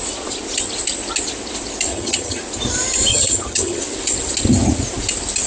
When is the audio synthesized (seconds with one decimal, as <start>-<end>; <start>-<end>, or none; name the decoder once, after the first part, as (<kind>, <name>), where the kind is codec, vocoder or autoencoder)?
1.9-2.4 (vocoder, HiFi-GAN); 3.1-3.8